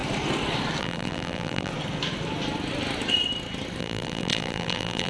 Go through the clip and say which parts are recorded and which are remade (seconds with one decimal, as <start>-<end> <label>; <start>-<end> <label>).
0.0-0.8 recorded; 0.8-1.7 remade; 1.7-3.8 recorded; 3.8-5.1 remade